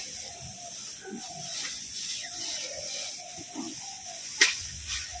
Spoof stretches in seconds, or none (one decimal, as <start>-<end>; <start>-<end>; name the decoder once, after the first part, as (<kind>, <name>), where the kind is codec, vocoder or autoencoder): 1.0-3.1 (vocoder, Vocos); 3.7-5.2